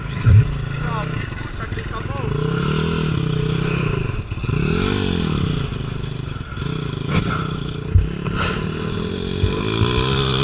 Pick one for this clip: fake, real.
real